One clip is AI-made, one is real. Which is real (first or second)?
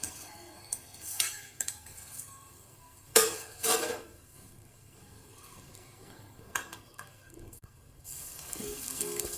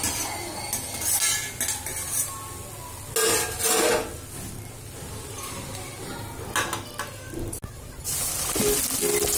second